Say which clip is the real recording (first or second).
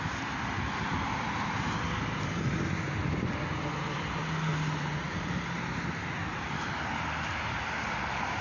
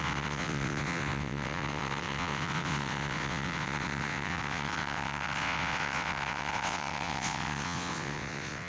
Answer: first